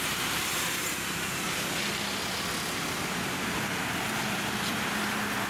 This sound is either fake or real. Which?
real